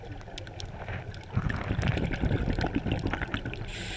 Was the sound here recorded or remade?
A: recorded